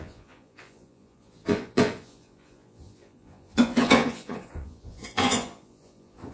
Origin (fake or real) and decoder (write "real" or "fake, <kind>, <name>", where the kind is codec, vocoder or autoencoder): fake, vocoder, Vocos